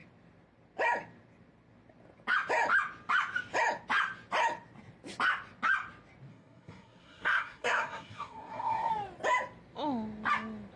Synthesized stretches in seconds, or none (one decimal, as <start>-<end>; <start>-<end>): 6.3-8.9